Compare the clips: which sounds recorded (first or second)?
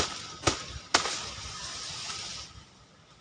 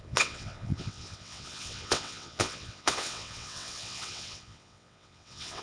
first